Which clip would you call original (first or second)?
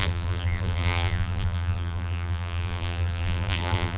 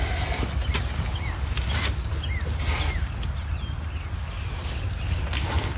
second